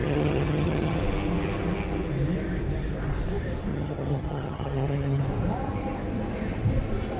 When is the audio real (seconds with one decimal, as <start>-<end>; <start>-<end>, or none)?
1.0-3.7; 5.2-7.2